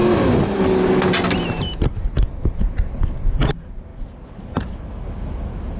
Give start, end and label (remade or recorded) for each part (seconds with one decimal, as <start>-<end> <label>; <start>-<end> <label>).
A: 0.0-5.8 recorded